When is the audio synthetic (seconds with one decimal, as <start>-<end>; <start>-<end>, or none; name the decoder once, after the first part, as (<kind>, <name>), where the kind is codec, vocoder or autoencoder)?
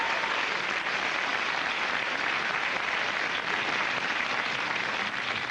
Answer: none